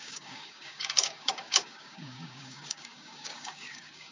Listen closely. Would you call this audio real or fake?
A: fake